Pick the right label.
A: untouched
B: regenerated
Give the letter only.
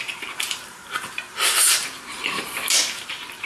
B